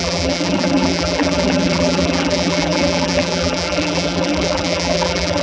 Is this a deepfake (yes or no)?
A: yes